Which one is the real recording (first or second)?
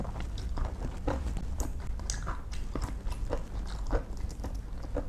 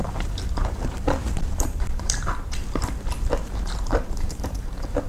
first